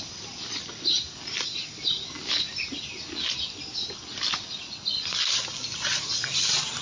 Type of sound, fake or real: real